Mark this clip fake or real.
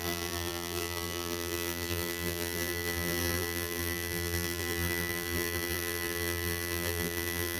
fake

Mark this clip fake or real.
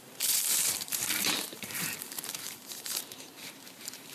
fake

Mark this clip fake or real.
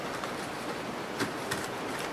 fake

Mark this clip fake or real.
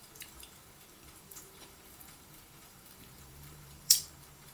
fake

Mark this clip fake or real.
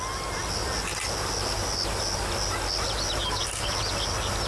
real